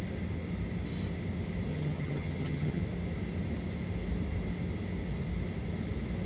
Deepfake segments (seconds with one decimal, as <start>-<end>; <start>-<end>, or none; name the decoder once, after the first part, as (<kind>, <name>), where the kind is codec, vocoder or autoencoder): 1.7-2.8 (vocoder, HiFi-GAN)